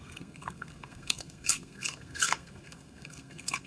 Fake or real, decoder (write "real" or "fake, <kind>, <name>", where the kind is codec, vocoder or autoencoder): fake, codec, SNAC